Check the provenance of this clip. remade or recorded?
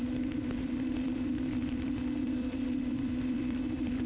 remade